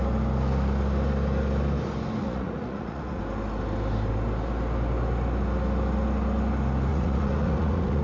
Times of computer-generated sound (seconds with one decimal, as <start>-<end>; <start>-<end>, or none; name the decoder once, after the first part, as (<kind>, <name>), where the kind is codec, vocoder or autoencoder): 2.2-3.2 (vocoder, Vocos); 6.9-8.0